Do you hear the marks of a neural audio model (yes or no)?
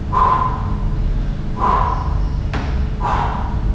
no